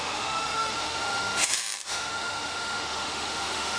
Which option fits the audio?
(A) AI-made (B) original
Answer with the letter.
A